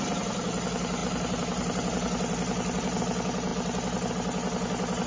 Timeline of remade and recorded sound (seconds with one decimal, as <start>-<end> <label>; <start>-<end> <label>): 0.0-1.0 recorded; 1.0-3.0 remade; 3.0-5.1 recorded